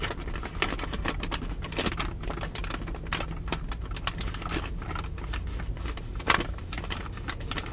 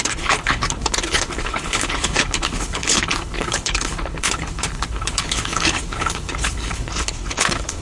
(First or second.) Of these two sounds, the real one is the first